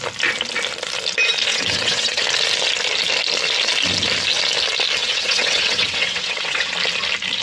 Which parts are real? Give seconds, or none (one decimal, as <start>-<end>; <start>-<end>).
0.0-1.5; 2.2-5.0; 6.7-7.4